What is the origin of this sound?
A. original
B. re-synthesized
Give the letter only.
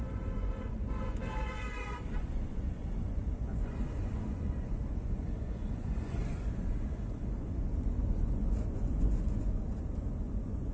B